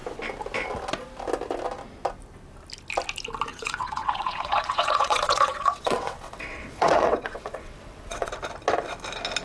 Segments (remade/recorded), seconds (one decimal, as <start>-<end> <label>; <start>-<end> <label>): 0.0-3.5 recorded; 3.5-8.3 remade; 8.3-9.4 recorded